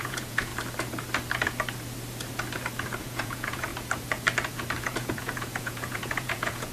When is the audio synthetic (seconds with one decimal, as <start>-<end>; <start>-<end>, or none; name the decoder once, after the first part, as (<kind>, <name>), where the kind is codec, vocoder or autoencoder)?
0.0-0.5 (vocoder, Vocos); 3.0-3.7; 4.8-6.7

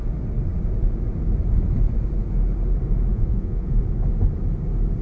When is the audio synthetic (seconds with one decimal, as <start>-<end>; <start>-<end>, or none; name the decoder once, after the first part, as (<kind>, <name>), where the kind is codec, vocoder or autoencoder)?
3.1-3.8 (vocoder, Vocos)

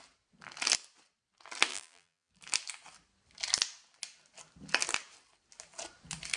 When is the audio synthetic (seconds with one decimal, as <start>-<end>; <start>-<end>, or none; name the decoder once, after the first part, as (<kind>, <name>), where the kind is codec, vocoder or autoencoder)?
1.7-2.3 (vocoder, BigVGAN v2)

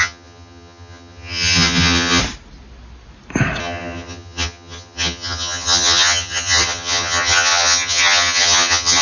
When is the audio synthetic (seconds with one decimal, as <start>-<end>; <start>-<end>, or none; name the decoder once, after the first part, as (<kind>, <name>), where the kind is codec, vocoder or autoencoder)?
0.0-2.2 (vocoder, HiFi-GAN); 3.6-9.0

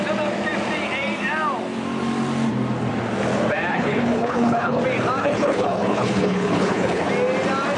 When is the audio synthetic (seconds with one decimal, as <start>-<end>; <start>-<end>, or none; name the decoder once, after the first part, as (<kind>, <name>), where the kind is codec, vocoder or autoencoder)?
3.7-4.8 (codec, HILCodec); 5.2-7.1

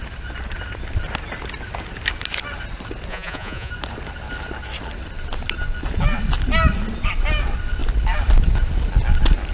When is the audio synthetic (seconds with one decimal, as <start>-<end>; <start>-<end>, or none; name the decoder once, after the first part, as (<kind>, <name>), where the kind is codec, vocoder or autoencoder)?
3.1-3.7 (vocoder, Vocos)

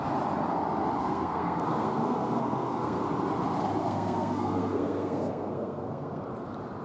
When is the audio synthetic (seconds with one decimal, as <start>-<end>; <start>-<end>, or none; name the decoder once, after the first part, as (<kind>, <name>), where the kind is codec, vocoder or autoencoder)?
1.0-3.0 (codec, SNAC); 3.8-6.2

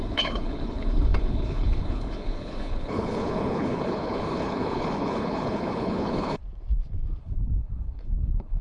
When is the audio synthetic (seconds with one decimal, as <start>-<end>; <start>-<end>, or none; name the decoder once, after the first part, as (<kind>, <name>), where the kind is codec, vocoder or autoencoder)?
0.0-6.4 (codec, HILCodec); 7.2-8.6